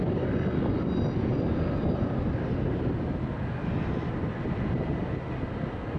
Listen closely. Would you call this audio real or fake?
real